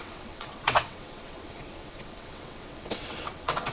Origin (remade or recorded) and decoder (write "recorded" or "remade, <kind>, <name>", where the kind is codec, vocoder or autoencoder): remade, vocoder, WaveNeXt